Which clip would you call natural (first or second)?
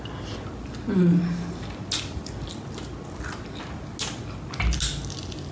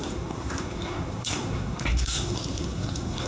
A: first